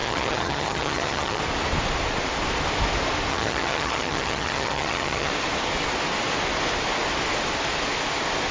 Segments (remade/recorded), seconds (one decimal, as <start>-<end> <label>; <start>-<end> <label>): 0.0-1.4 remade; 1.4-3.3 recorded; 3.3-5.3 remade; 5.3-8.5 recorded